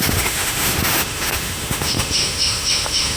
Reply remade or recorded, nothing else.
remade